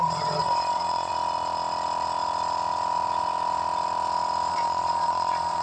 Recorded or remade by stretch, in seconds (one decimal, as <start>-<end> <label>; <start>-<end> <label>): 0.0-1.1 remade; 1.1-4.5 recorded; 4.5-5.6 remade